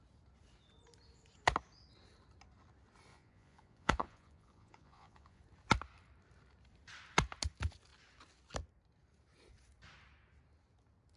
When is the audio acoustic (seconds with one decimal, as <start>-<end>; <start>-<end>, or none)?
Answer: 0.0-3.1; 5.4-11.2

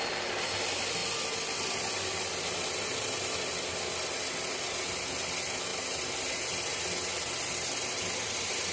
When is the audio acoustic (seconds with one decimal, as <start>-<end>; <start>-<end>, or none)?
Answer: 0.0-8.7

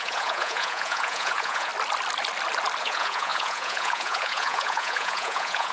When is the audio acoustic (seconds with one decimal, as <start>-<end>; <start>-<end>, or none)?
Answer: 1.7-2.8

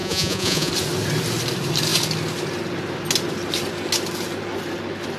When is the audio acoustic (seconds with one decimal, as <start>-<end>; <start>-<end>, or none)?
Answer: 0.7-5.2

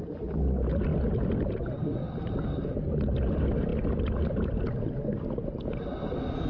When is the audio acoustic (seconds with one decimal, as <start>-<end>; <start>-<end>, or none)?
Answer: 0.0-6.5

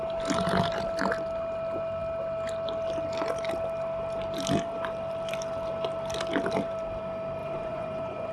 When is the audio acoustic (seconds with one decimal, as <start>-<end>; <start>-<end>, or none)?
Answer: 0.0-7.4

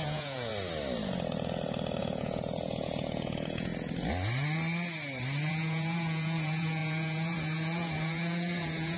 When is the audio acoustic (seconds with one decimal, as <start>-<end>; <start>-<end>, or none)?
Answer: 0.5-2.0; 3.7-5.5